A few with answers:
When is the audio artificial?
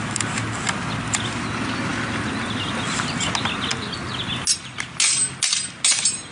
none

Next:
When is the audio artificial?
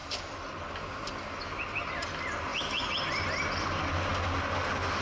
none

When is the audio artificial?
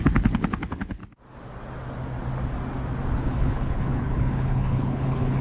0.0-1.0 (codec, HILCodec); 3.2-5.4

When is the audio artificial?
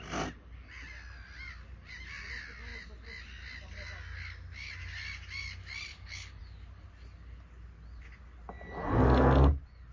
5.9-6.4 (codec, HILCodec)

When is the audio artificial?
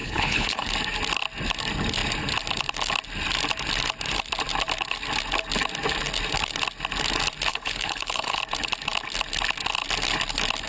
0.0-0.7 (codec, HILCodec); 7.5-8.4